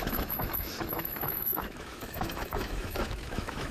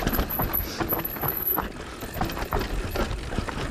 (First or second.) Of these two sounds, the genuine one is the second